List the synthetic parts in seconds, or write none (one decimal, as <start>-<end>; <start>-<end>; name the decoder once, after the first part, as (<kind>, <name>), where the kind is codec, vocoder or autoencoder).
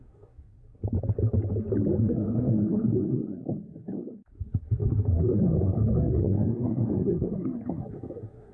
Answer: 0.0-0.8 (codec, SNAC); 2.0-8.5